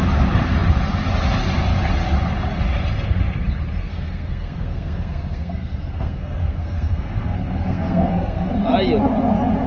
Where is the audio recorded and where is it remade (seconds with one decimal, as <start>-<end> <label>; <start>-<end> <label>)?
0.0-3.8 recorded; 3.8-8.5 remade; 8.5-9.7 recorded